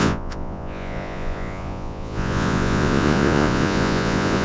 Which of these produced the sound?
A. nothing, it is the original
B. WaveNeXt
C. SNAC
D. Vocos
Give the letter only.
D